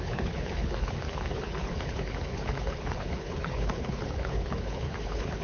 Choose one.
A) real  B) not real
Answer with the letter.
B